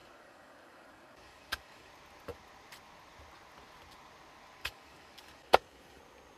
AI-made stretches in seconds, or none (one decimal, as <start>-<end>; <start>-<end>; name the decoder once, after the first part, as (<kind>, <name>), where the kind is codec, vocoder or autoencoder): 0.0-1.9 (codec, DAC); 4.6-6.0